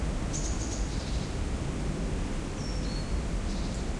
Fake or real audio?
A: real